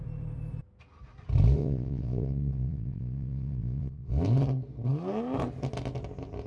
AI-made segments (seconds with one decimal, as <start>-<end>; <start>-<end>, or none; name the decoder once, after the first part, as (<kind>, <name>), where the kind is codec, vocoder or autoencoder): 1.6-4.1 (vocoder, Vocos)